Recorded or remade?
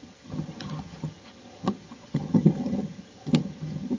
remade